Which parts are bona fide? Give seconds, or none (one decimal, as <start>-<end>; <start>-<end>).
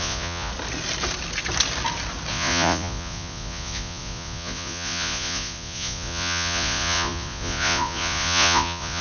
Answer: 0.5-2.3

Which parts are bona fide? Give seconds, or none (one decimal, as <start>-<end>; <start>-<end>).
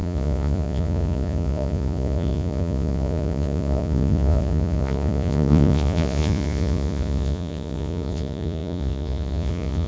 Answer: none